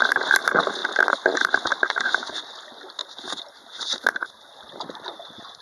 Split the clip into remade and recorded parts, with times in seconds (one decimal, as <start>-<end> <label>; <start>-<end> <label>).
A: 0.0-3.0 recorded; 3.0-4.4 remade; 4.4-5.6 recorded